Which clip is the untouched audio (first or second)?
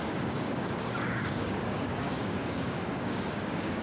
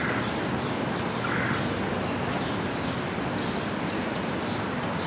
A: second